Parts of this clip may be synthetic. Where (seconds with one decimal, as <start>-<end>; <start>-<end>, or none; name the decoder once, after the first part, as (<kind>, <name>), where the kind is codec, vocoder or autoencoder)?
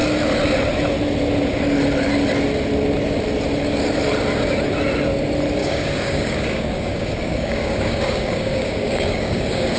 5.6-9.8 (codec, DAC)